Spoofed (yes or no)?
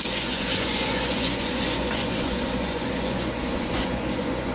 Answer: yes